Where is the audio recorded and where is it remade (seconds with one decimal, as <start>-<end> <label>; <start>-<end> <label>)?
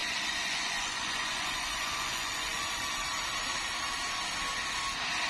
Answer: 0.0-3.2 remade; 3.2-5.3 recorded